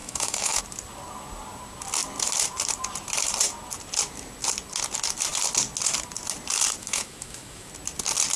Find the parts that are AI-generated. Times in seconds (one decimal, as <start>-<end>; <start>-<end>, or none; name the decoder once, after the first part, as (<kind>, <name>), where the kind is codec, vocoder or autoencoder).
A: 0.0-0.6 (autoencoder, DAC-VAE); 6.8-7.7